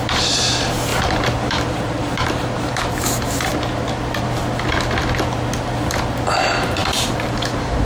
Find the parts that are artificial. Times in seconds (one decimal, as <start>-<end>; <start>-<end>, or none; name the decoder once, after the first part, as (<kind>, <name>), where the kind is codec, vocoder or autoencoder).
0.0-0.9 (vocoder, BigVGAN v2); 1.5-3.5; 6.3-7.8